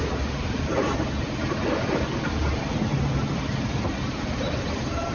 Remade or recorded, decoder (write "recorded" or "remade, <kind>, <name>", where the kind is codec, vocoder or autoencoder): recorded